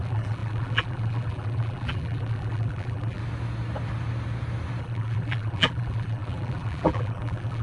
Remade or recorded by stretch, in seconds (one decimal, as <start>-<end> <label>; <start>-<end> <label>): 0.0-3.2 remade; 3.2-4.8 recorded; 4.8-7.6 remade